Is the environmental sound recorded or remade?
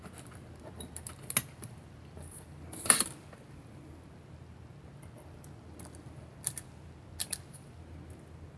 recorded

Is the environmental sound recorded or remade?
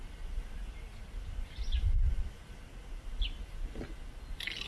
recorded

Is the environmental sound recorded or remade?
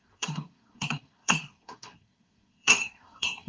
remade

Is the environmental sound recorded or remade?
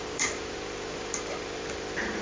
remade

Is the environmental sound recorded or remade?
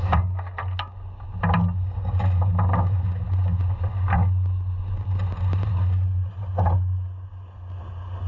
recorded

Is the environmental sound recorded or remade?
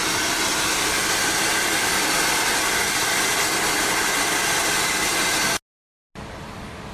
recorded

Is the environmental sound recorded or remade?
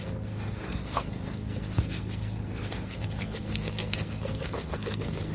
remade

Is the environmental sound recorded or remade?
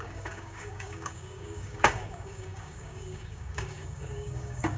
remade